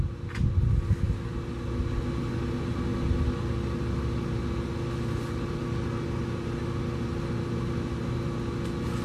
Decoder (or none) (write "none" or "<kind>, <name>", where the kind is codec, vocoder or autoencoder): none